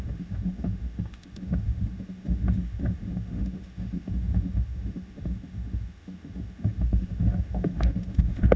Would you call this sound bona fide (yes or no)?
no